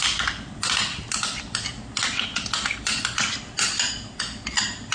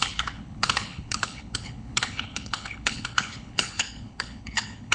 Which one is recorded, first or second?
first